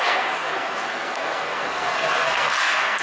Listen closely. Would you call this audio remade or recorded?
remade